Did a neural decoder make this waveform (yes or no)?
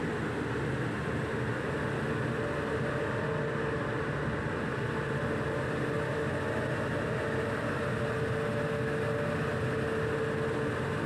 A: no